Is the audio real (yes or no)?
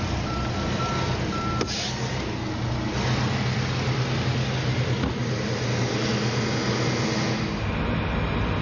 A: yes